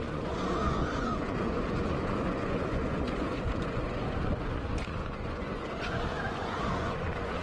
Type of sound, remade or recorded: remade